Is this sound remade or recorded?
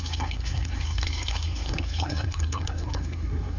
remade